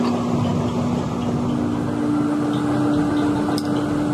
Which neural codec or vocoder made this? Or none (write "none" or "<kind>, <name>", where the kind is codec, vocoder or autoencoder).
none